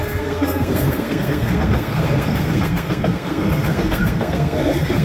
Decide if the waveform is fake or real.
fake